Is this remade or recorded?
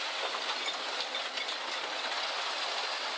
recorded